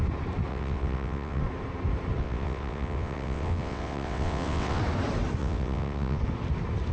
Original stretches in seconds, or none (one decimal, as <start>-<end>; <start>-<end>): 0.0-0.5; 1.4-2.2; 4.8-5.4; 6.2-6.9